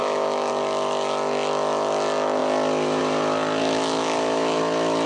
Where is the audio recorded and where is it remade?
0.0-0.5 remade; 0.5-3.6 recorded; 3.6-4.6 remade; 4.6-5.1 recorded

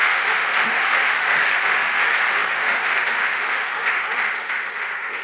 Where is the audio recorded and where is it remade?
0.0-5.2 remade

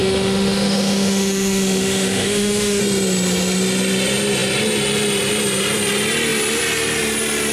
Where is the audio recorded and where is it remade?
0.0-2.8 remade; 2.8-7.5 recorded

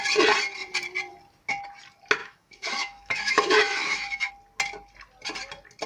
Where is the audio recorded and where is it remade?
0.0-2.2 recorded; 2.2-4.3 remade; 4.3-5.9 recorded

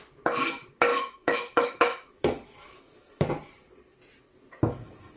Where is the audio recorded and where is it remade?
0.0-0.9 recorded; 0.9-3.3 remade; 3.3-5.2 recorded